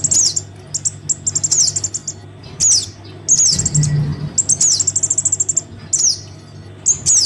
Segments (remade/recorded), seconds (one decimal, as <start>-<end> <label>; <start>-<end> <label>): 0.0-7.3 recorded